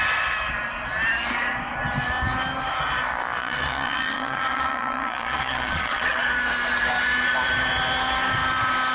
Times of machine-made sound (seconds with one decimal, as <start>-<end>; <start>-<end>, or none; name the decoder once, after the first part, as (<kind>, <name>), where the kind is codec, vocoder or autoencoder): 3.4-6.2 (vocoder, Vocos)